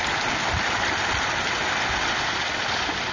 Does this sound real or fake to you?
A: real